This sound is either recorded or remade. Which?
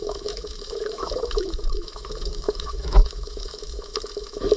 remade